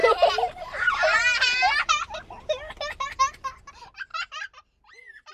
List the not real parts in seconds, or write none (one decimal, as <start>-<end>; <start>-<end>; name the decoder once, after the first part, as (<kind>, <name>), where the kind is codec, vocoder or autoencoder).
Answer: 0.0-3.2 (vocoder, BigVGAN v2); 4.1-5.3